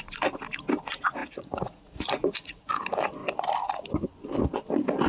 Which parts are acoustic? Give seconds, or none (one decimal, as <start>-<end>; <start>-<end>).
0.0-1.2; 2.7-5.1